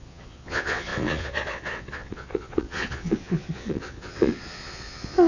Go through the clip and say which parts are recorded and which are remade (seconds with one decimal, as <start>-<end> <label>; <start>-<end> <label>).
0.0-5.3 remade

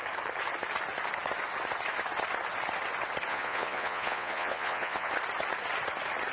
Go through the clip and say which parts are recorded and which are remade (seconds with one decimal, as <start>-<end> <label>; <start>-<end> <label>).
0.0-3.3 recorded; 3.3-5.1 remade; 5.1-6.3 recorded

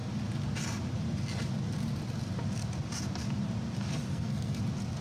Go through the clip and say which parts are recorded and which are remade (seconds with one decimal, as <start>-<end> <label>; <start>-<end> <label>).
0.0-4.1 recorded; 4.1-4.6 remade; 4.6-5.0 recorded

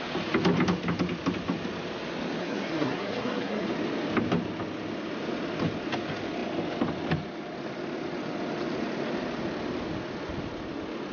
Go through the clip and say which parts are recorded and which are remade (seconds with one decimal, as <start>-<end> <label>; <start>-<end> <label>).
0.0-2.4 recorded; 2.4-3.7 remade; 3.7-11.1 recorded

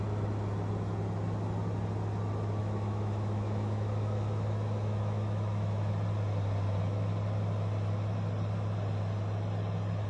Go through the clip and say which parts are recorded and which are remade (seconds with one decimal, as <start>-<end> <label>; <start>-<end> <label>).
0.0-2.6 recorded; 2.6-5.9 remade; 5.9-10.1 recorded

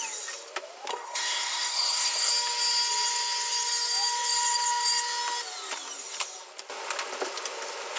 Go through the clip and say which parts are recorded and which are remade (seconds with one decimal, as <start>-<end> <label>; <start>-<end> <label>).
0.0-0.9 recorded; 0.9-2.3 remade; 2.3-8.0 recorded

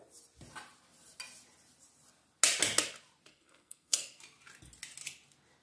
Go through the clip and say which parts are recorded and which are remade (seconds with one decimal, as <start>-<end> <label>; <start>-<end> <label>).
0.0-3.3 recorded; 3.3-4.2 remade; 4.2-5.6 recorded

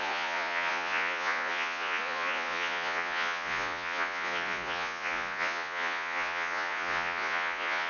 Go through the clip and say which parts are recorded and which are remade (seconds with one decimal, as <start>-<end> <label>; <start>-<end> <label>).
0.0-7.9 remade